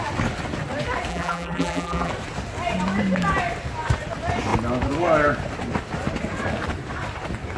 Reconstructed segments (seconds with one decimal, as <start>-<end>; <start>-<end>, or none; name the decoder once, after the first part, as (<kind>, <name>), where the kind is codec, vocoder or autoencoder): 1.1-2.1 (vocoder, BigVGAN v2)